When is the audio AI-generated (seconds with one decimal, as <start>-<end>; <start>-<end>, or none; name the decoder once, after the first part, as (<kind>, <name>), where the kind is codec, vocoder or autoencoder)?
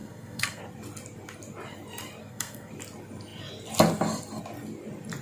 0.0-0.6 (codec, SNAC); 2.2-2.7